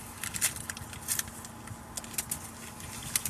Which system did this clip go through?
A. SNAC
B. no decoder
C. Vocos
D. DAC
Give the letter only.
B